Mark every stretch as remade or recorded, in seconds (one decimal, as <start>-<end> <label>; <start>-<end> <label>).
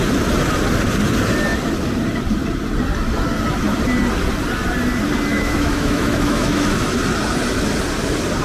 0.0-5.3 recorded; 5.3-7.0 remade; 7.0-8.4 recorded